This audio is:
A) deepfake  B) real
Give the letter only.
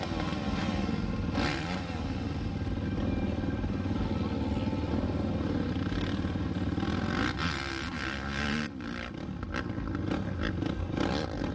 B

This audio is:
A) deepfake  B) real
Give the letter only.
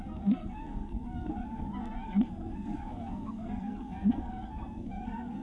A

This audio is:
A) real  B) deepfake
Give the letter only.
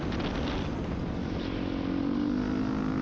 A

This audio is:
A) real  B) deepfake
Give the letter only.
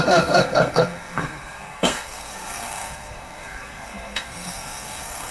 B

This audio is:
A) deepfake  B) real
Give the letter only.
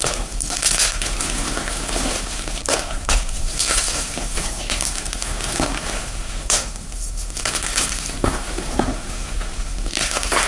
A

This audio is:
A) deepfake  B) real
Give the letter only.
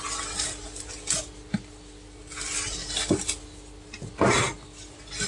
B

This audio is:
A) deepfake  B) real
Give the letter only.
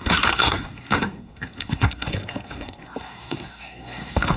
A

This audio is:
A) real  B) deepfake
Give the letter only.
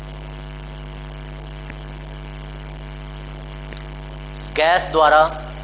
A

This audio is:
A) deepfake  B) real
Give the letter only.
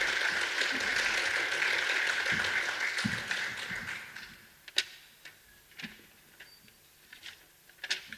B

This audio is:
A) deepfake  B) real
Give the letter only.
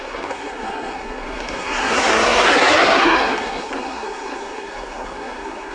A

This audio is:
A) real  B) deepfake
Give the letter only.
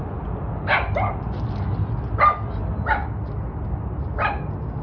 A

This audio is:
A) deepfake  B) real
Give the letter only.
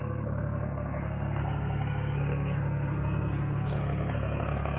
A